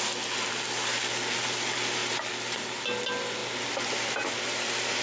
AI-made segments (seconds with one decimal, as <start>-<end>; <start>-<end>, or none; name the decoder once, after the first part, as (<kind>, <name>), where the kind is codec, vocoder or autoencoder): none